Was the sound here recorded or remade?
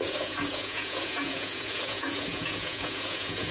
remade